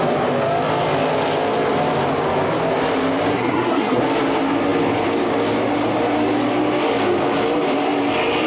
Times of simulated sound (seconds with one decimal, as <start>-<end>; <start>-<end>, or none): 3.3-4.0